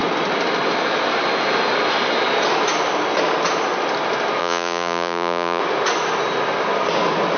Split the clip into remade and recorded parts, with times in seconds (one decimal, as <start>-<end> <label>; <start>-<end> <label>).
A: 0.0-4.4 recorded; 4.4-5.6 remade; 5.6-7.4 recorded